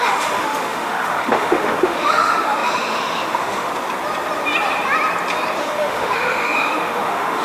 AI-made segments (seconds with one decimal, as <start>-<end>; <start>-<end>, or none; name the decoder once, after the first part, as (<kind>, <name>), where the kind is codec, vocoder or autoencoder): 0.0-3.7 (autoencoder, DAC-VAE); 5.6-7.4